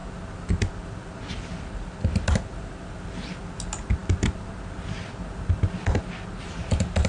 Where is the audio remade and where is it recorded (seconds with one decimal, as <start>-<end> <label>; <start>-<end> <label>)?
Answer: 0.0-7.1 recorded